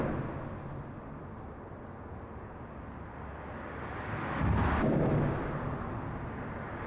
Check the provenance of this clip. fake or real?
real